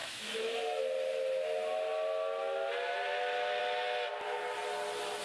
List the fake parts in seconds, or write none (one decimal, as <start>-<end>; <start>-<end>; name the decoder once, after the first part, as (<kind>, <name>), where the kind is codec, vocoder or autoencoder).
0.0-0.8 (autoencoder, DAC-VAE)